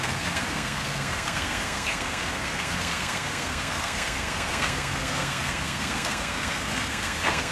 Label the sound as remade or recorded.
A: remade